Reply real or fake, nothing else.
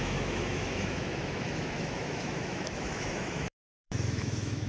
fake